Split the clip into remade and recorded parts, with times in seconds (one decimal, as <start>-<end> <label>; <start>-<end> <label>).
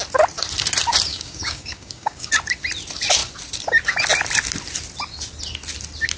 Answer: 0.0-1.1 recorded; 1.1-2.3 remade; 2.3-6.2 recorded